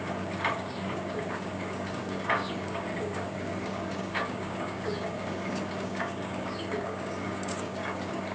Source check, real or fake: fake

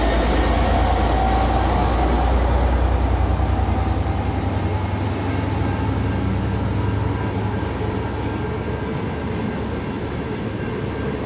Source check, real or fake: real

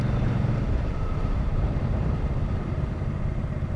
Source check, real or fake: fake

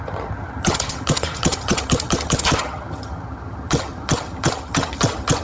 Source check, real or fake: fake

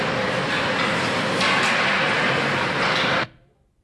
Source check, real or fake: real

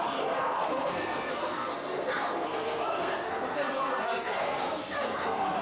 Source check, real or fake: fake